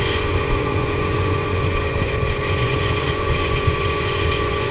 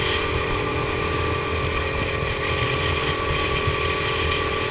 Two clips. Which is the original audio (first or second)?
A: second